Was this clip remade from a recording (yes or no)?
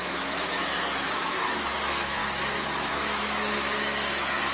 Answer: yes